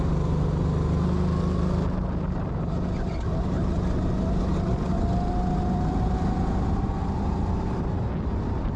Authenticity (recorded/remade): recorded